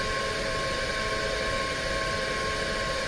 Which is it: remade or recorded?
recorded